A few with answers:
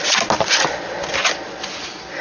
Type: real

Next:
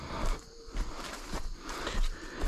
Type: fake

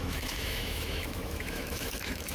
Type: fake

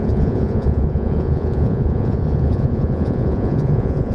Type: fake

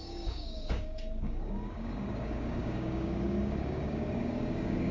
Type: fake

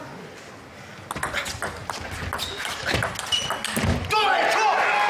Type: real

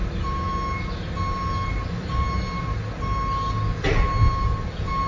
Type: real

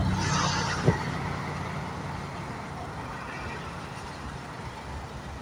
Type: real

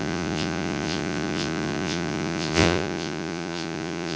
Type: fake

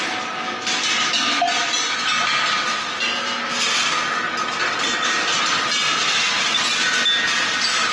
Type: real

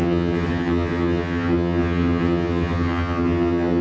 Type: fake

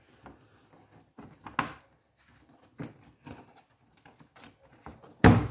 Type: real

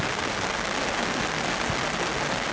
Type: real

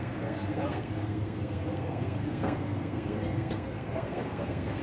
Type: fake